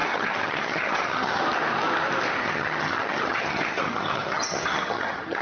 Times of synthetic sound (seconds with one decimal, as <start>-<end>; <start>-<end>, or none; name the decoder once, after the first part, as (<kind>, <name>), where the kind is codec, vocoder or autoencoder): 0.0-1.4 (vocoder, HiFi-GAN); 2.4-5.4

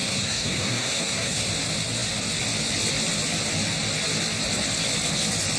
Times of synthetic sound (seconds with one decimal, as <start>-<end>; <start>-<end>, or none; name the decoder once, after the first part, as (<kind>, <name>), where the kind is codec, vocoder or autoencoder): 0.0-1.5 (codec, SNAC)

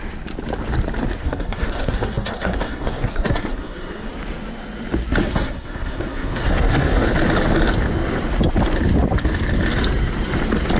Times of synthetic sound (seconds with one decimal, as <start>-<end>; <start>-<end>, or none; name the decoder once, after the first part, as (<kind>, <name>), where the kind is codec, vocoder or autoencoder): 1.2-4.1 (codec, SNAC); 5.2-7.1

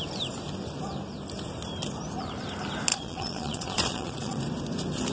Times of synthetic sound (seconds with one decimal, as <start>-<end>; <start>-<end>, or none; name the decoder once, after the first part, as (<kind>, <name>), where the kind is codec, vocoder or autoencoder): 2.9-4.4 (vocoder, Vocos)

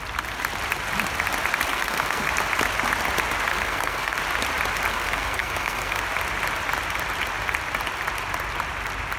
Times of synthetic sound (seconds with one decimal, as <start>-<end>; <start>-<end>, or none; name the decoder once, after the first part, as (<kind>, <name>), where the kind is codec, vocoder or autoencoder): 1.7-2.3 (codec, SNAC); 3.5-4.2; 4.9-6.0